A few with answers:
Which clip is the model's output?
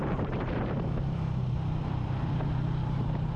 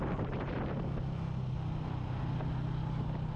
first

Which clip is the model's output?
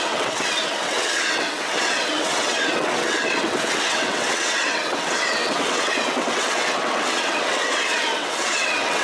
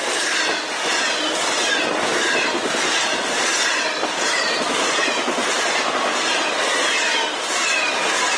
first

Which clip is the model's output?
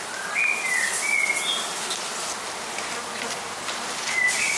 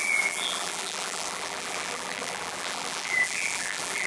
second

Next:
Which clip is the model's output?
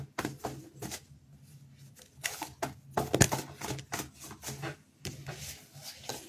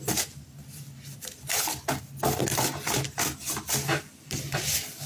second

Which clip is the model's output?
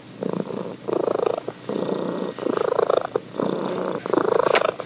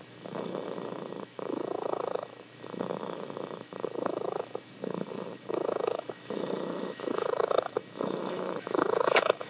second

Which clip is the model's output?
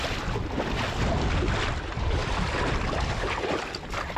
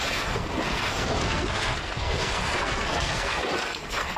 second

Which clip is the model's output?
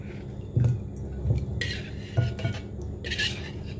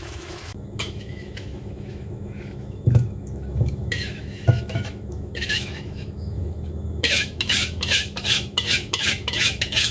second